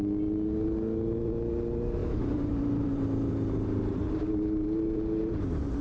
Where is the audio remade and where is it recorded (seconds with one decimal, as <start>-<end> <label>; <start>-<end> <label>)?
0.0-2.0 recorded; 2.0-5.8 remade